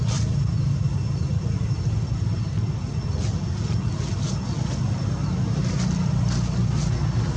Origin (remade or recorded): recorded